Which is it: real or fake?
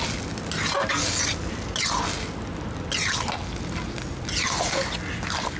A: real